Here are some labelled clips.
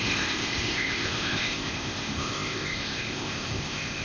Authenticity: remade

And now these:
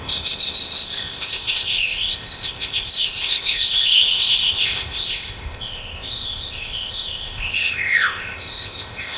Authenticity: remade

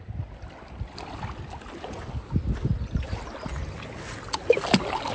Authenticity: recorded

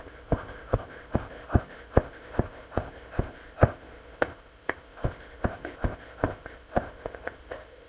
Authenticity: remade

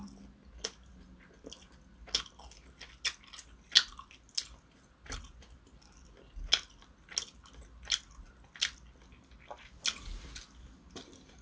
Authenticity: recorded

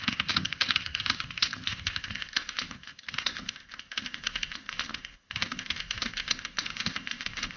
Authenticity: remade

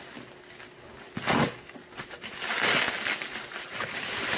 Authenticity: recorded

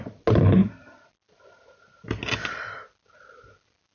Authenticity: recorded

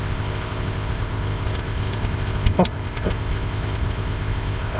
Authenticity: remade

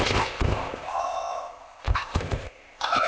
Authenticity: remade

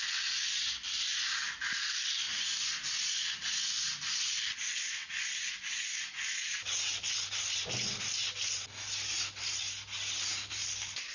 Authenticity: recorded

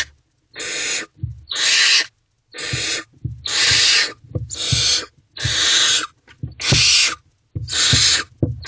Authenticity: recorded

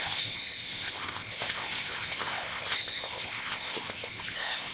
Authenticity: remade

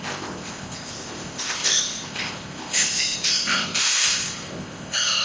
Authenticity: remade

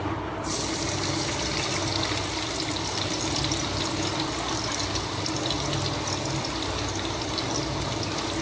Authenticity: recorded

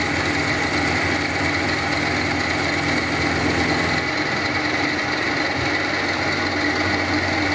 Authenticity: recorded